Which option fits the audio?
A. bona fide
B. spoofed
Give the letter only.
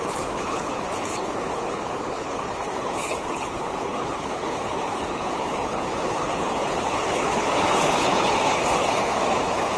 B